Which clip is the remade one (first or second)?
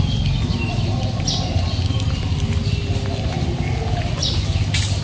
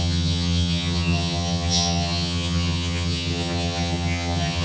second